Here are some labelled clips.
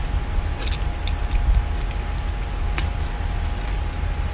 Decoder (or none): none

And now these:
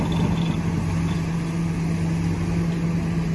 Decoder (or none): none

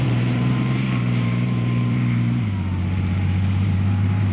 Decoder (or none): vocoder, BigVGAN v2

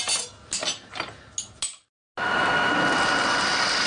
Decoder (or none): none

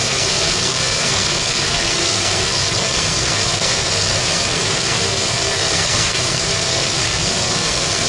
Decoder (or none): codec, SNAC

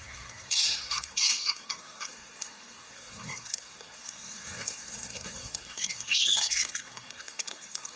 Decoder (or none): codec, SNAC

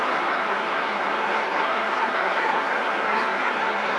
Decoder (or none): codec, SNAC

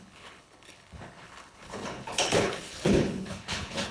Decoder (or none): codec, HILCodec